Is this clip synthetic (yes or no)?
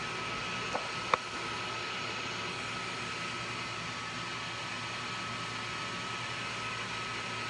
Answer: no